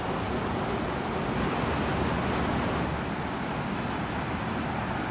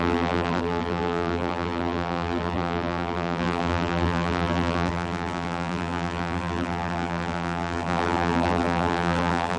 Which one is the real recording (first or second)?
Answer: first